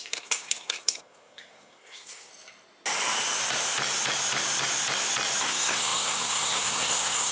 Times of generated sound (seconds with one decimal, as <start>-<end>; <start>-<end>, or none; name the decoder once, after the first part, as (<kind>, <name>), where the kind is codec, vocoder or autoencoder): 0.0-2.3 (codec, SNAC); 5.4-7.3